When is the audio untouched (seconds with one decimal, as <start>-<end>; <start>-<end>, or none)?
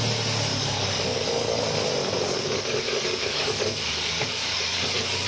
0.0-0.5; 1.6-2.0